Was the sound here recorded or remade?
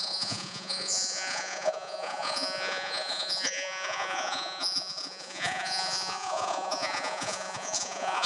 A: remade